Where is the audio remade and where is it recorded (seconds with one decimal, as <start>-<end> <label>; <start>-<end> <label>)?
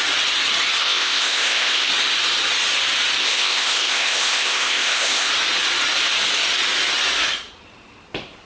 0.0-0.8 recorded; 0.8-1.9 remade; 1.9-3.2 recorded; 3.2-5.3 remade; 5.3-8.5 recorded